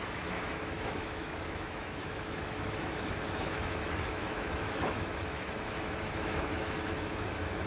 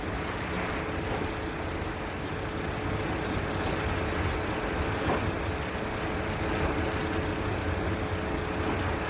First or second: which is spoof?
first